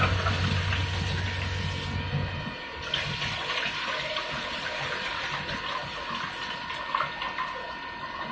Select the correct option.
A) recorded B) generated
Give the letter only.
A